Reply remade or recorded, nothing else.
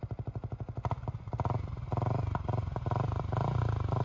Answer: recorded